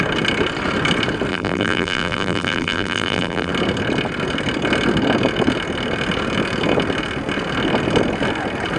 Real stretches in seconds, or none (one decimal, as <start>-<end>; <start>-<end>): 0.0-1.3; 3.5-8.8